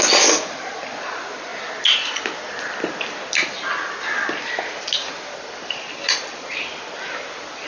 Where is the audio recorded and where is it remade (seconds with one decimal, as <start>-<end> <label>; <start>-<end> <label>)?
0.0-7.7 recorded